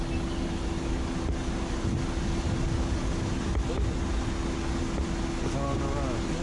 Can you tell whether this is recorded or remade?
recorded